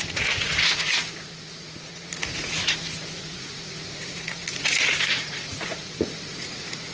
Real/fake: fake